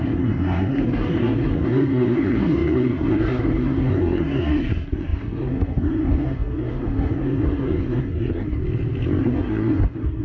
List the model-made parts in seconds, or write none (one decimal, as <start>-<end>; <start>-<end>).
0.0-8.6; 9.2-10.2